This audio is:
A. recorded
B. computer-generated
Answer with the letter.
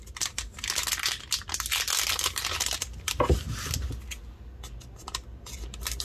A